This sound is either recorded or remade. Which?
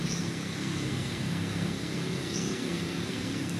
remade